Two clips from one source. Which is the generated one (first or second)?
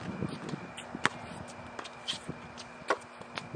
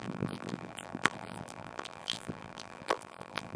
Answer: second